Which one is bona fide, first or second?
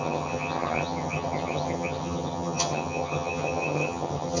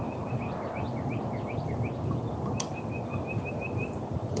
second